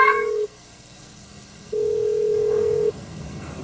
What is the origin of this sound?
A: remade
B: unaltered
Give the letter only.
A